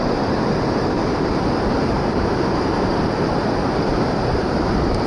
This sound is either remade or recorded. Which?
remade